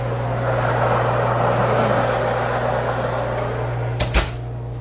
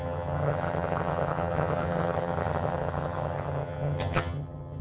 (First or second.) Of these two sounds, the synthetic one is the second